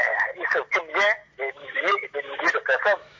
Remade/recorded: remade